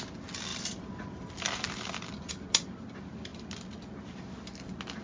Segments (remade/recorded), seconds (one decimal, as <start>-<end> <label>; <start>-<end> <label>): 0.0-0.5 recorded; 0.5-2.3 remade; 2.3-5.0 recorded